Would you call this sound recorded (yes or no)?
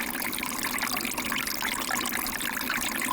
yes